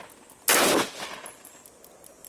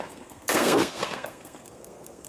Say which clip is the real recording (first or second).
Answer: first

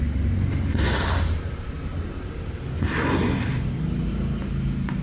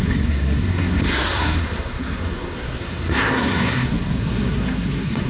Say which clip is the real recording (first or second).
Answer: first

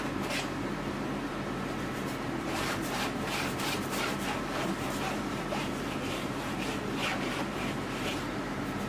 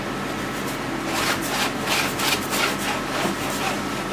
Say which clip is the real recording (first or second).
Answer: second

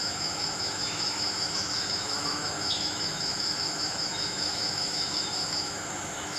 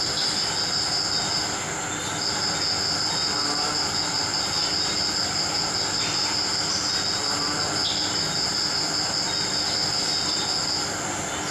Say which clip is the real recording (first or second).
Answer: second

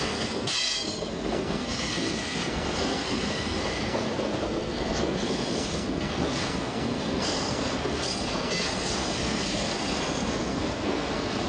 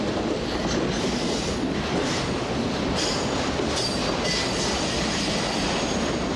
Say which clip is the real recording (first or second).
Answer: second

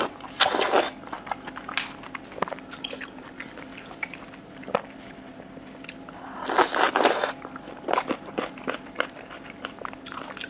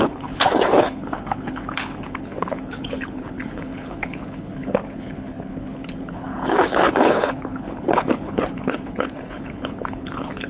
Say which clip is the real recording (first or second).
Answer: first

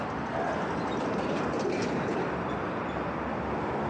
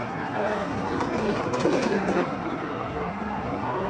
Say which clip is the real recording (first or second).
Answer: first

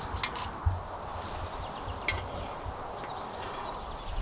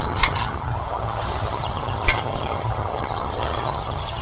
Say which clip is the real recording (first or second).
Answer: first